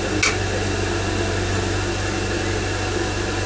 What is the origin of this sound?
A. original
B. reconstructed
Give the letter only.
A